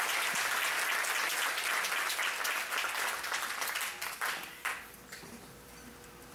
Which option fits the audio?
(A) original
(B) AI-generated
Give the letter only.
A